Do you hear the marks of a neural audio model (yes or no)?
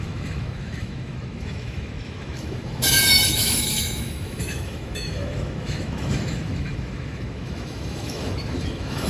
yes